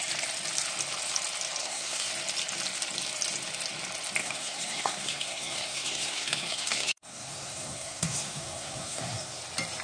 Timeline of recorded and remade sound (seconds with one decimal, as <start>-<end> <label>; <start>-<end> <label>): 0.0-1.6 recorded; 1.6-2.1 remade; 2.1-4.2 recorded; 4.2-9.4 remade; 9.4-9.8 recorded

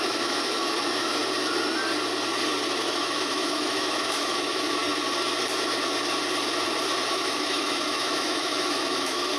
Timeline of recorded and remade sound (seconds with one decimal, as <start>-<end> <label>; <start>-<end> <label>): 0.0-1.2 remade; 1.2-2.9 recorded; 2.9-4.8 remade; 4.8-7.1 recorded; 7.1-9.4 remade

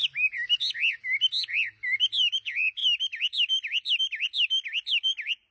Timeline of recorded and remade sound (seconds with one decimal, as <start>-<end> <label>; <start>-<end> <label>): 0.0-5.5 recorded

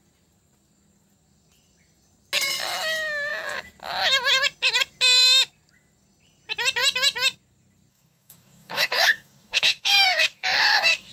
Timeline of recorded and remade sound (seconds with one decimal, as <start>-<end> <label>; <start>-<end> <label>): 0.0-7.9 recorded; 7.9-11.1 remade